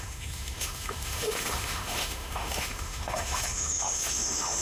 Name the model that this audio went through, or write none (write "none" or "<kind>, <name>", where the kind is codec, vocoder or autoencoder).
autoencoder, DAC-VAE